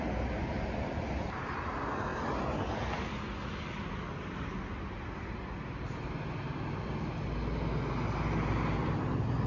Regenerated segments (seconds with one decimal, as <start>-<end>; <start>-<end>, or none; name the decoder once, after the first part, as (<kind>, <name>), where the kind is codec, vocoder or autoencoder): none